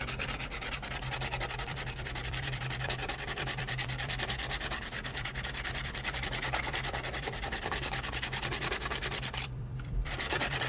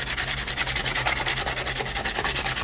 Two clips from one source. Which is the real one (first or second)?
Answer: second